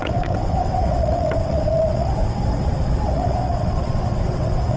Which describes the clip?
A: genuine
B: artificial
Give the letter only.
B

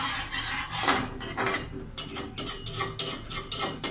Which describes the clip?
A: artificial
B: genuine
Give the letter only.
B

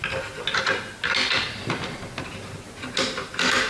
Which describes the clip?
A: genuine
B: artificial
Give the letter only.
A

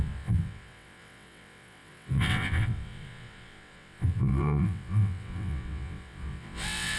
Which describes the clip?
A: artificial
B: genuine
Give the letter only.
A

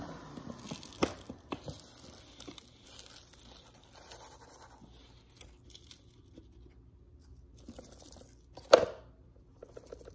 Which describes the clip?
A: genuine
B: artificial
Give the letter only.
A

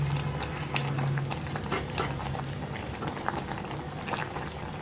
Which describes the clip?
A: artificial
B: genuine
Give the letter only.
B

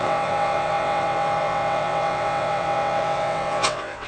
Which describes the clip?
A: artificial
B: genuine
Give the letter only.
A